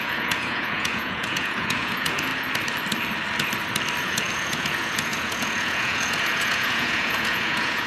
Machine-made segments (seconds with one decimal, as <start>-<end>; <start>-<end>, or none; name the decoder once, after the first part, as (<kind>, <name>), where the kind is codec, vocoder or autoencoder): 0.0-2.3 (vocoder, Vocos); 4.0-7.9